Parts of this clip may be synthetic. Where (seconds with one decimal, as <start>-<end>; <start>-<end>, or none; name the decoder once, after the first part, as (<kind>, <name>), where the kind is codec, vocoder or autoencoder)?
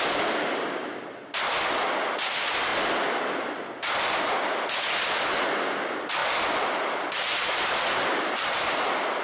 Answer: none